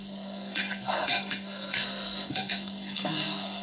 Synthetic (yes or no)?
yes